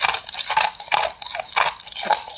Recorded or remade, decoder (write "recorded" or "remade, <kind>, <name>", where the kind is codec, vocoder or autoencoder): recorded